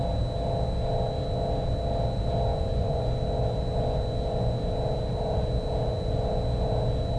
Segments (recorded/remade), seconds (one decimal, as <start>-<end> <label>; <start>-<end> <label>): 0.0-2.5 recorded; 2.5-3.0 remade; 3.0-7.2 recorded